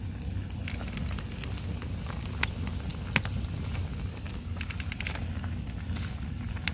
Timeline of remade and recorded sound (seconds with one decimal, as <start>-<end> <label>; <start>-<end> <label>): 0.0-6.7 recorded

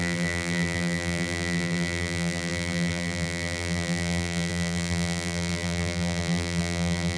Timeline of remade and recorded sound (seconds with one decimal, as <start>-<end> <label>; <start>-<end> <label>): 0.0-7.2 remade

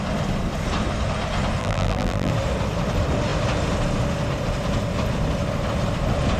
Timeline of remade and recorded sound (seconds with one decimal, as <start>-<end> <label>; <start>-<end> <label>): 0.0-1.6 recorded; 1.6-2.3 remade; 2.3-6.4 recorded

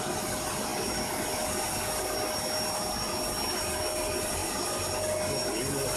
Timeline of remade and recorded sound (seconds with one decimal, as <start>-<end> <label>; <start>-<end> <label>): 0.0-6.0 recorded

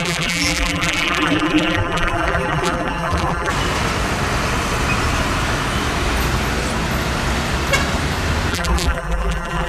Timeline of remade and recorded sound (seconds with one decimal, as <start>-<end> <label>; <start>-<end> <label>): 0.0-3.5 remade; 3.5-8.5 recorded; 8.5-9.7 remade